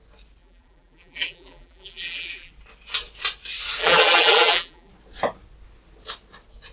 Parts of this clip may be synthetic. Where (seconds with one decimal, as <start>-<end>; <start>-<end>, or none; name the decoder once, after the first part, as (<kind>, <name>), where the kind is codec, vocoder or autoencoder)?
0.4-2.5 (vocoder, BigVGAN v2); 3.8-4.9